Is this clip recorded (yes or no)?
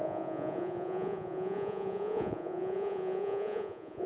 no